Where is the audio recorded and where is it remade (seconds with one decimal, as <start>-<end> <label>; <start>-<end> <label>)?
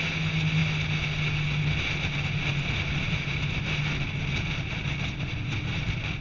0.0-6.2 recorded